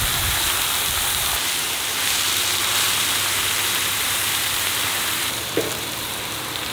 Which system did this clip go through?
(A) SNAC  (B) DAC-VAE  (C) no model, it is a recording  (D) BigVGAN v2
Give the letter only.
D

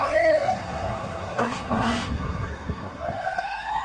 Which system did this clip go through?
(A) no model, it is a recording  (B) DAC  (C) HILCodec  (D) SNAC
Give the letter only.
D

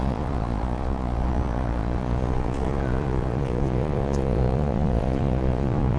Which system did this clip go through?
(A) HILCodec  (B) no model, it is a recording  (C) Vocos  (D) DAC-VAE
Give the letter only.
C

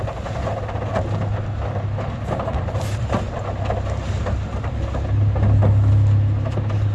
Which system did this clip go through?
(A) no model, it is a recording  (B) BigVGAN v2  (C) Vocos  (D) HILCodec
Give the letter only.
A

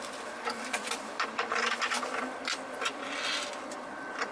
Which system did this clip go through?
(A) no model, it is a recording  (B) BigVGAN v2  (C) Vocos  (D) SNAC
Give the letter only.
B